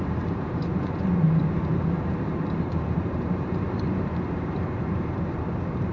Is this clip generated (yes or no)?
yes